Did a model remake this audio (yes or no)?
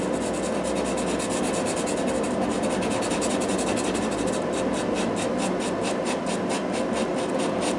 no